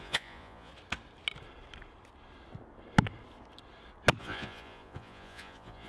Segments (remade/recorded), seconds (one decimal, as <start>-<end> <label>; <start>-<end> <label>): 0.0-0.7 remade; 0.7-4.2 recorded; 4.2-5.9 remade